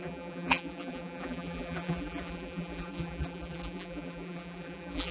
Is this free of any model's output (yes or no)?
no